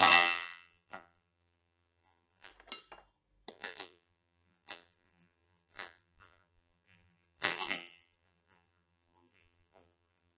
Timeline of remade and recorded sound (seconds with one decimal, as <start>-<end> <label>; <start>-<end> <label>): 0.0-2.5 remade; 2.5-3.5 recorded; 3.5-10.4 remade